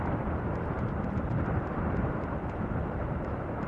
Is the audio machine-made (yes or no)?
yes